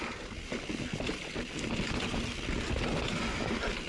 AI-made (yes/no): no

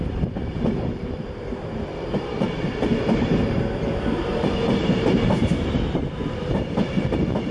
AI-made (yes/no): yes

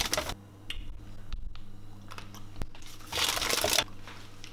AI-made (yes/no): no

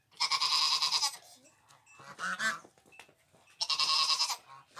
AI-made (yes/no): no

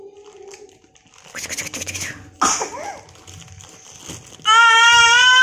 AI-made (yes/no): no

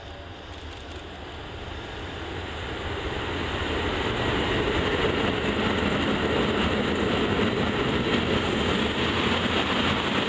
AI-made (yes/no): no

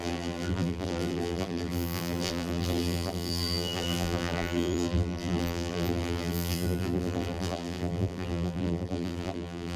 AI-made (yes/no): yes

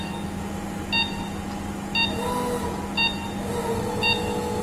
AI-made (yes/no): no